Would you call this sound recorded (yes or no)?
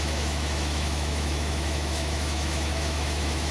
no